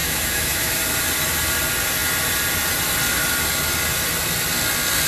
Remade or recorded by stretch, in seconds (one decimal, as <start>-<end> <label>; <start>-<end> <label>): 0.0-0.8 remade; 0.8-5.1 recorded